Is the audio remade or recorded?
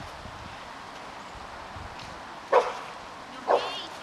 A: recorded